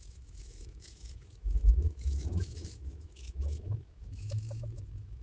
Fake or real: fake